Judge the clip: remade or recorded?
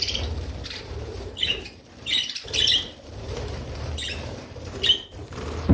remade